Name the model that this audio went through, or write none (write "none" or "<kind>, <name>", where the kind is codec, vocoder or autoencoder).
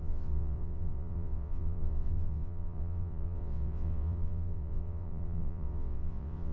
vocoder, WaveNeXt